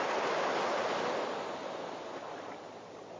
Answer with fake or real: real